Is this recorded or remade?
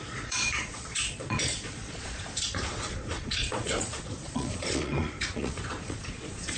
remade